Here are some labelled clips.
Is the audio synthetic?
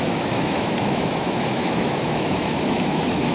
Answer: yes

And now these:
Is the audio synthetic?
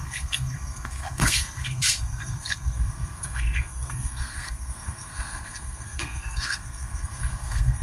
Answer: yes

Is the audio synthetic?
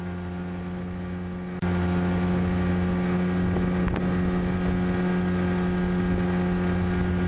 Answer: no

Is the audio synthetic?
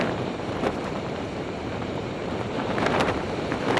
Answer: yes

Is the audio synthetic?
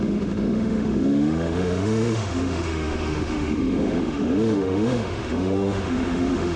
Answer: yes